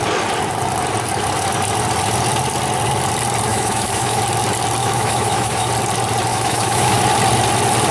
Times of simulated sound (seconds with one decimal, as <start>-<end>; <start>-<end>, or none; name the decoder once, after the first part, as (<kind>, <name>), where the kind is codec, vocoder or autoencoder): 3.5-4.2 (autoencoder, DAC-VAE); 4.8-5.7; 6.3-7.0